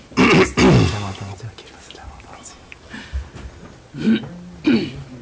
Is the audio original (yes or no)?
yes